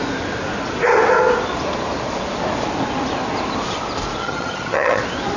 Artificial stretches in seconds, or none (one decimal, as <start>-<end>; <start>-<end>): 4.2-5.0